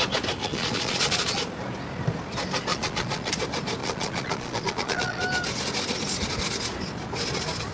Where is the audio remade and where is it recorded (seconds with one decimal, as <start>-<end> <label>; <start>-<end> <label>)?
0.0-0.4 recorded; 0.4-1.4 remade; 1.4-2.7 recorded; 2.7-3.3 remade; 3.3-3.8 recorded; 3.8-5.2 remade; 5.2-7.7 recorded